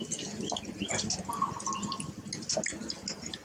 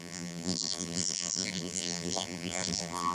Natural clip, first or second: first